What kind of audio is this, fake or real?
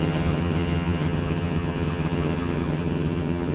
fake